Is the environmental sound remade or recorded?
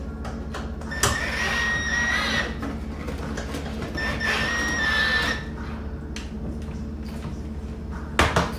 recorded